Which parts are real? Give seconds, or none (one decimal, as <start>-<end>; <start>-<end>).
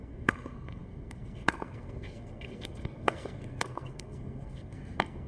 none